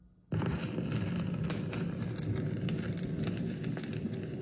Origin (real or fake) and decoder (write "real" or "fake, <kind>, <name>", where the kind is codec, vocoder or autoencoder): real